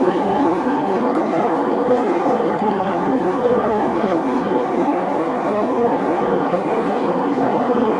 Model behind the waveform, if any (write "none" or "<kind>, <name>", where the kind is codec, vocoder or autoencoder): codec, SNAC